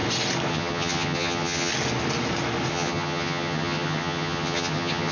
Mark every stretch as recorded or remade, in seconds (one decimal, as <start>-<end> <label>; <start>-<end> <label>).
0.0-0.5 recorded; 0.5-1.7 remade; 1.7-2.7 recorded; 2.7-5.1 remade